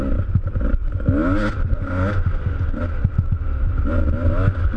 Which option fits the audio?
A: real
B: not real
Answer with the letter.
A